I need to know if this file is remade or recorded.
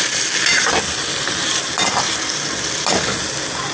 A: recorded